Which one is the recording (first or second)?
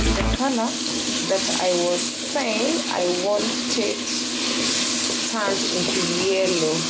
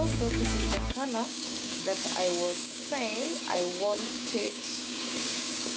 first